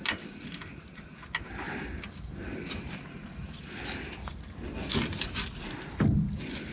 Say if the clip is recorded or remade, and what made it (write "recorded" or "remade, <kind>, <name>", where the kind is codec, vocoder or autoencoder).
recorded